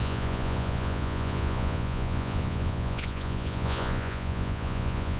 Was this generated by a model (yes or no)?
yes